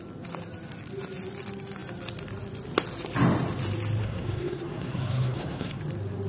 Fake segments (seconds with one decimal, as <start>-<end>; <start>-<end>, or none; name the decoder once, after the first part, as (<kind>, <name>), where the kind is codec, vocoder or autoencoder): 4.0-5.8 (codec, SNAC)